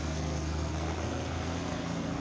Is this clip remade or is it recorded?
remade